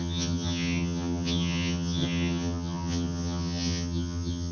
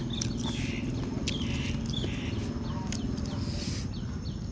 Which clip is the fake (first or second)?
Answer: first